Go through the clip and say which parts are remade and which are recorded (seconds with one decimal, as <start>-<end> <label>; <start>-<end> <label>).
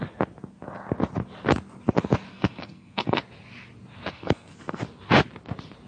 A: 0.0-2.3 recorded; 2.3-3.2 remade; 3.2-4.1 recorded; 4.1-4.8 remade; 4.8-5.9 recorded